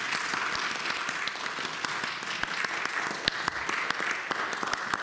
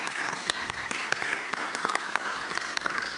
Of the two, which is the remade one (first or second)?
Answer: second